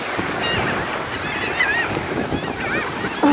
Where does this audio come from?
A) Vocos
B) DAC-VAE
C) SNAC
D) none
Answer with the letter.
D